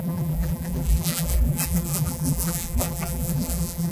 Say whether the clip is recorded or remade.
remade